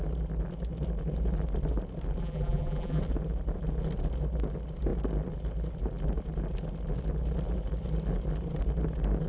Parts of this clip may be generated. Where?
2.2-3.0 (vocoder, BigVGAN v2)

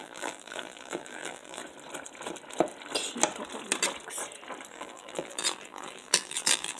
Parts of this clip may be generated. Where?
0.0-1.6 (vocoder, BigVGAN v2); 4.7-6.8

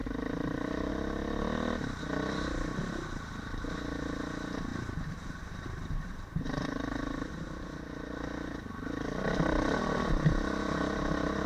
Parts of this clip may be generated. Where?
0.0-0.9 (vocoder, BigVGAN v2); 4.7-7.7